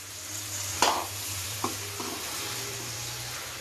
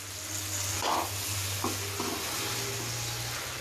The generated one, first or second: first